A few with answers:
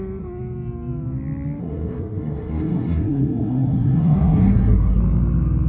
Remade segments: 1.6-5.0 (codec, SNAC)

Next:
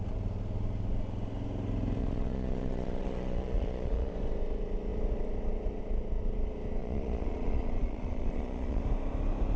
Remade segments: 2.0-4.1 (vocoder, Vocos); 6.8-8.8